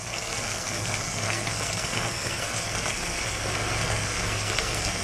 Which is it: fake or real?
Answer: fake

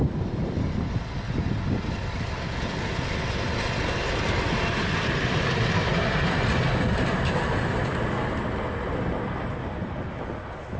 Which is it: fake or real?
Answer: real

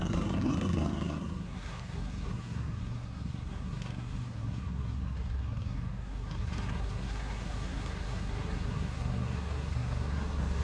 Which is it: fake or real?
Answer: fake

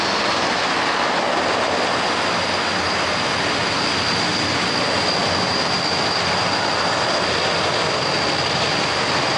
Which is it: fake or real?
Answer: real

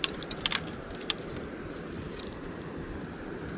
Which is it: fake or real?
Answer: real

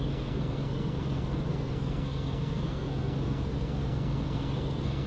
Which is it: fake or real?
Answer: fake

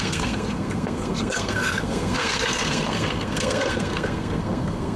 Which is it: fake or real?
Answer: fake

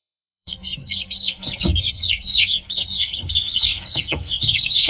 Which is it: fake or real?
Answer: fake